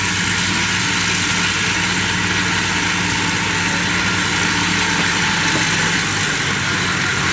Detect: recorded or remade recorded